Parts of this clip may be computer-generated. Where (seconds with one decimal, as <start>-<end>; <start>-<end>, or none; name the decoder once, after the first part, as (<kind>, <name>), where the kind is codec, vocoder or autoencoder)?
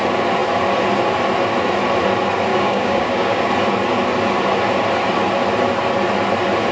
2.5-3.5 (codec, DAC)